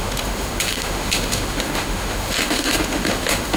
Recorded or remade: remade